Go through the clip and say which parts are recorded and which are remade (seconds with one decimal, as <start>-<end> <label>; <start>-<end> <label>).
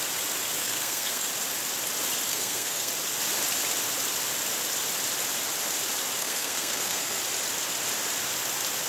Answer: 0.0-0.6 recorded; 0.6-1.3 remade; 1.3-2.3 recorded; 2.3-2.9 remade; 2.9-6.2 recorded; 6.2-7.2 remade; 7.2-8.9 recorded